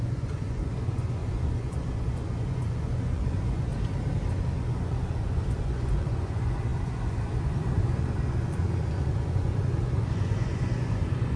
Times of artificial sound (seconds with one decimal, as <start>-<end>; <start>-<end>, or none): 0.0-3.7; 4.3-11.4